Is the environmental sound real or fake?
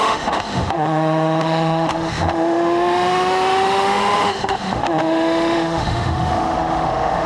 fake